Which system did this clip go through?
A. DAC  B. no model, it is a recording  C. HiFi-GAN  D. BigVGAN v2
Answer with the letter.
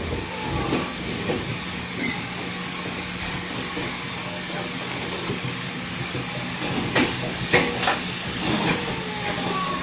A